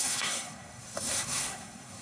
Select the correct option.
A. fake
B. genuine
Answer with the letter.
A